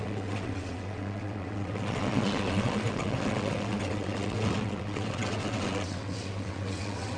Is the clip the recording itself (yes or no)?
no